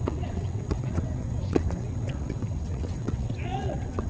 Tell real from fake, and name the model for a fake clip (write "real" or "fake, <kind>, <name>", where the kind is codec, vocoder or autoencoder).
fake, vocoder, WaveNeXt